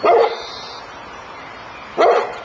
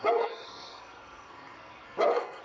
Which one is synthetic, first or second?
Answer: second